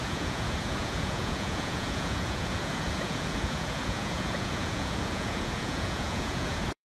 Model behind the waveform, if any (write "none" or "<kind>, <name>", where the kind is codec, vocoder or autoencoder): vocoder, Vocos